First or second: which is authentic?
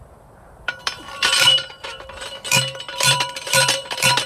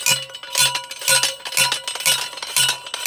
second